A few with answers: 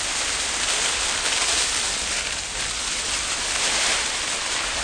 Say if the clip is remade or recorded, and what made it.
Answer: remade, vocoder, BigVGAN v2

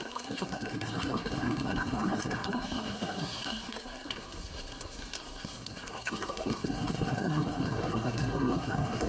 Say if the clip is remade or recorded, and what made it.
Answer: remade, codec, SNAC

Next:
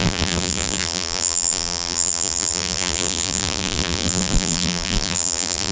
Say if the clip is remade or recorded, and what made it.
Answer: remade, vocoder, BigVGAN v2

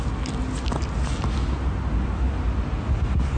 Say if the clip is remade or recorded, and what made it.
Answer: recorded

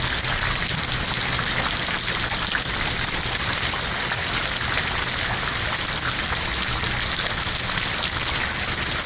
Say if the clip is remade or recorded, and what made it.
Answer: recorded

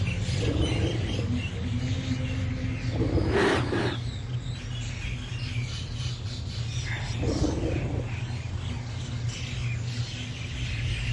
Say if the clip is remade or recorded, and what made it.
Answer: recorded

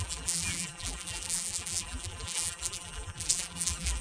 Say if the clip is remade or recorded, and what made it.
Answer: remade, vocoder, BigVGAN v2